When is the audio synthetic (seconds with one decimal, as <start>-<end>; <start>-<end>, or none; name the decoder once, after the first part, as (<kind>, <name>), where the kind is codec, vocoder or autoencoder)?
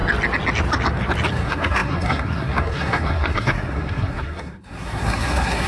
1.3-5.7 (codec, SNAC)